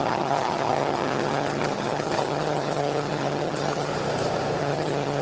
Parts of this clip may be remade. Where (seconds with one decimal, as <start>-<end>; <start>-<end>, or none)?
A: 0.0-3.9; 4.6-5.2